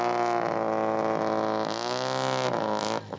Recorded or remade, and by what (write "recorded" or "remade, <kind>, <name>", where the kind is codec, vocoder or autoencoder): recorded